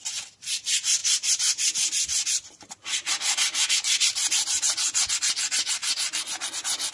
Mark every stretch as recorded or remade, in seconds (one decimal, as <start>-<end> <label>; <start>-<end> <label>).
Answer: 0.0-6.9 recorded